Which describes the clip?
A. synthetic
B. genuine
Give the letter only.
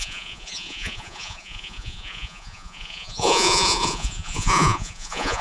A